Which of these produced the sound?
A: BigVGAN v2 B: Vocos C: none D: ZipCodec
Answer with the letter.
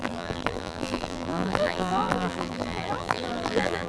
A